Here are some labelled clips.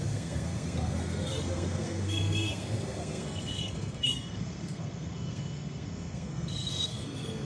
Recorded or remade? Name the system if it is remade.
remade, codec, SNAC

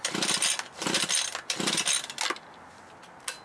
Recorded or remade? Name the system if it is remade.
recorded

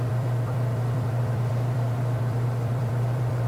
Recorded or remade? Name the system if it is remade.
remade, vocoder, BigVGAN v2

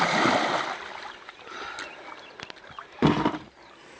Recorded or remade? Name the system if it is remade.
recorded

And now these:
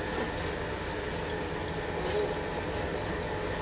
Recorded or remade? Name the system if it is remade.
recorded